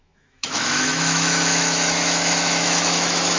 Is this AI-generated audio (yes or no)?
yes